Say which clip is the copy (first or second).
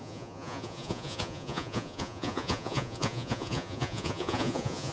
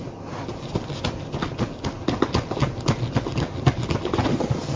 first